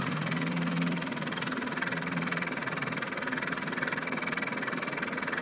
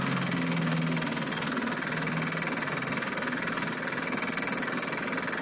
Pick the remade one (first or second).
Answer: first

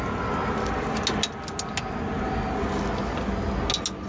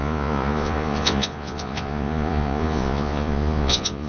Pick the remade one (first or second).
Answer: second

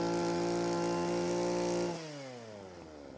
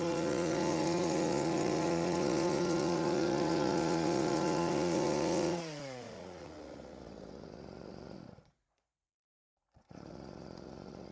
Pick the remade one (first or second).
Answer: second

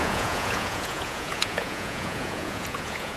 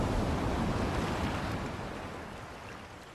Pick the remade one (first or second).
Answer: first